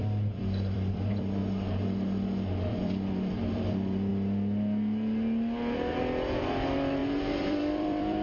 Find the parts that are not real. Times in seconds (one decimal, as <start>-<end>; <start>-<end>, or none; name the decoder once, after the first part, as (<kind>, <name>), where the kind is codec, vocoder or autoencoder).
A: 0.0-1.4 (vocoder, BigVGAN v2); 2.7-4.1; 5.9-8.2